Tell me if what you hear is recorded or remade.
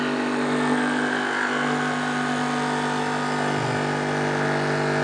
recorded